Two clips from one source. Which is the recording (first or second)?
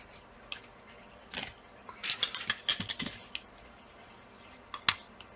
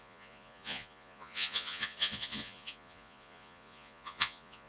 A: first